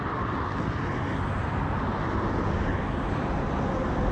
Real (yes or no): yes